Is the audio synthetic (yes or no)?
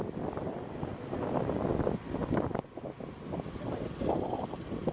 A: no